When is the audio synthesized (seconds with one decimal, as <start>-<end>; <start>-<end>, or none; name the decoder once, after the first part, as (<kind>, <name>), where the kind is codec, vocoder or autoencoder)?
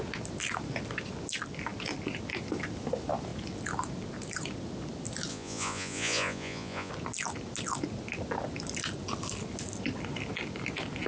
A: 5.3-6.9 (vocoder, Vocos)